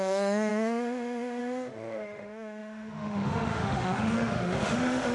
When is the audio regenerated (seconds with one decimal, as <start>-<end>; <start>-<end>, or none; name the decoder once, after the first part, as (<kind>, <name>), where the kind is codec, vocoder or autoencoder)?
0.0-5.1 (autoencoder, DAC-VAE)

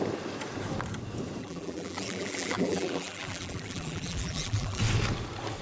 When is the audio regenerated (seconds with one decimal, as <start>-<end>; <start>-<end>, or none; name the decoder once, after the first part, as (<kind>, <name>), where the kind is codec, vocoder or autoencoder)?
1.4-4.8 (vocoder, BigVGAN v2)